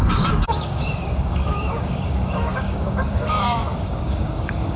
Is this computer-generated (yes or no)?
yes